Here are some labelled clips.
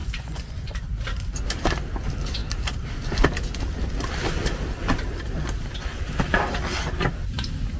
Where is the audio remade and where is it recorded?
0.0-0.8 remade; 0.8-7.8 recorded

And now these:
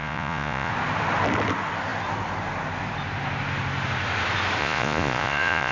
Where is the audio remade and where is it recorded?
0.0-0.7 remade; 0.7-4.6 recorded; 4.6-5.7 remade

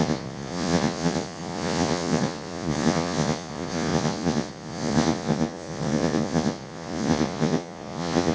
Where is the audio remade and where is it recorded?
0.0-8.3 remade

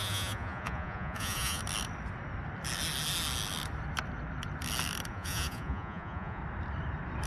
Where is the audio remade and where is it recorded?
0.0-1.6 remade; 1.6-5.1 recorded; 5.1-6.4 remade; 6.4-7.3 recorded

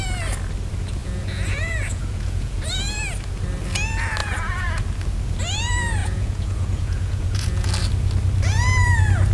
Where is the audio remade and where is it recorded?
0.0-1.0 recorded; 1.0-2.7 remade; 2.7-4.2 recorded; 4.2-4.8 remade; 4.8-6.0 recorded; 6.0-7.7 remade; 7.7-9.3 recorded

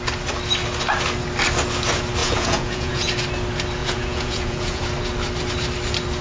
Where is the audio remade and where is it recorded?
0.0-2.2 recorded; 2.2-3.1 remade; 3.1-3.8 recorded; 3.8-4.8 remade; 4.8-6.2 recorded